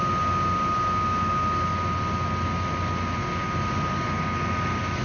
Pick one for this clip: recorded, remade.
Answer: recorded